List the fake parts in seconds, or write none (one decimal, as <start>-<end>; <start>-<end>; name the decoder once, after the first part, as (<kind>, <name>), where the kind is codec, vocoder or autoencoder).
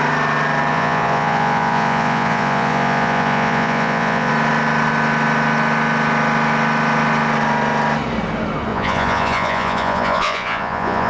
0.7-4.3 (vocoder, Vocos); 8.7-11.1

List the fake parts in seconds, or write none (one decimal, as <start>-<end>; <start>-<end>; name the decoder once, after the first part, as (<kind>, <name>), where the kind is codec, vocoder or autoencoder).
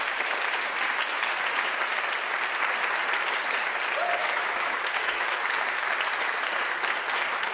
4.2-5.4 (autoencoder, DAC-VAE)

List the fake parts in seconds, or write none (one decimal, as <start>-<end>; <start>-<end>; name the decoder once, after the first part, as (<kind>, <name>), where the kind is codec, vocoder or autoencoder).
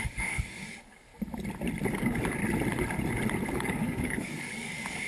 0.0-1.1 (codec, DAC); 1.9-2.4; 3.5-5.1